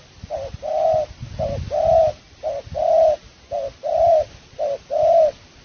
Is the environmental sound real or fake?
real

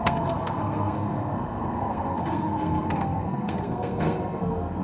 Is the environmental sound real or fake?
fake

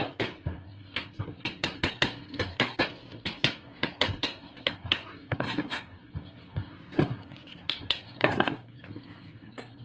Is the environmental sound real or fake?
fake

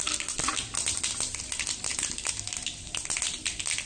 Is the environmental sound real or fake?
real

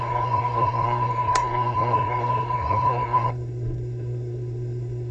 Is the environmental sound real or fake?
fake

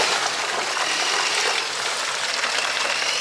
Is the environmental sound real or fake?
real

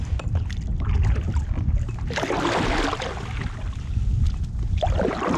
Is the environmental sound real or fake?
real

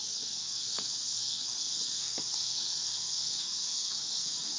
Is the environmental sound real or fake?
fake